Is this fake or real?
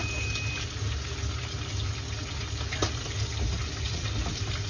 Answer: real